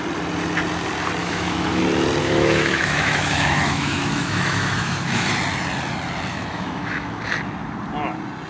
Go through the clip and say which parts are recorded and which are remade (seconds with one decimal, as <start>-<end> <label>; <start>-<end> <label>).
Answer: 0.0-1.2 recorded; 1.2-1.8 remade; 1.8-2.2 recorded; 2.2-5.3 remade; 5.3-6.3 recorded; 6.3-7.2 remade; 7.2-8.5 recorded